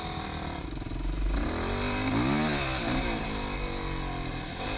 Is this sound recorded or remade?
recorded